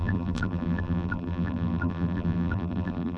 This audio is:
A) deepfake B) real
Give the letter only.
A